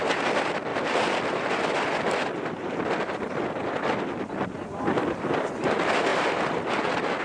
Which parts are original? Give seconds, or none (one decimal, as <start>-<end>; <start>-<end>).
0.0-0.7; 4.3-7.2

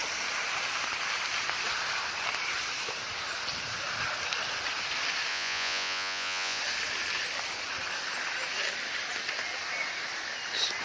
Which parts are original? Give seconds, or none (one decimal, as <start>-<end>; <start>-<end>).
0.0-5.3; 6.6-10.8

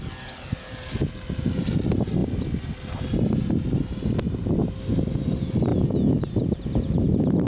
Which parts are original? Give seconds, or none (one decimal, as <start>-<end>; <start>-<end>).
0.0-7.5

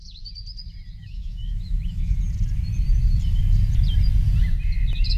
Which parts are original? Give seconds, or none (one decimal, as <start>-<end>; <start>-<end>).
0.0-1.0; 2.2-5.2